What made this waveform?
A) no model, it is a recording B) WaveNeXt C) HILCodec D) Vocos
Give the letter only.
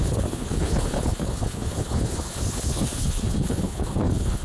C